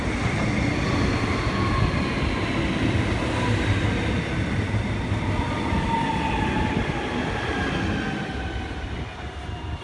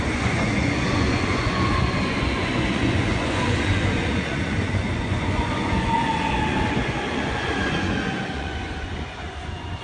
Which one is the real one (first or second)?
first